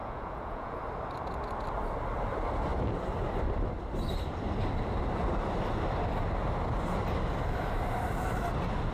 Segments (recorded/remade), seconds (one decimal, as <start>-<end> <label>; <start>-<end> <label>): 0.0-0.8 remade; 0.8-8.9 recorded